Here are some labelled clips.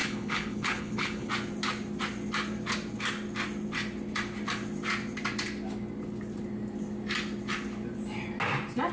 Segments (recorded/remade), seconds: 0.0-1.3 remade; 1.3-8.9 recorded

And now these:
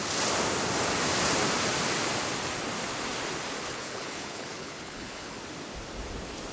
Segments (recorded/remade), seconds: 0.0-3.7 recorded; 3.7-5.4 remade; 5.4-6.5 recorded

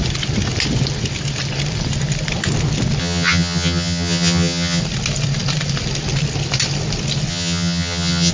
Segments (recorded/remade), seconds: 0.0-3.0 recorded; 3.0-4.8 remade; 4.8-7.3 recorded; 7.3-8.3 remade